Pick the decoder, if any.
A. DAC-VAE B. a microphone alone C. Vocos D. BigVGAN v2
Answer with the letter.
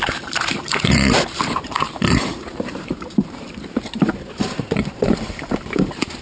D